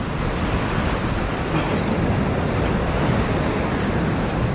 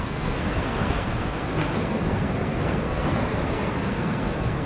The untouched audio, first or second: first